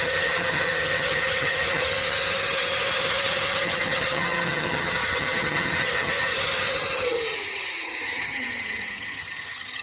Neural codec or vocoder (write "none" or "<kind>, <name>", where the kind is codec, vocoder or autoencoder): vocoder, HiFi-GAN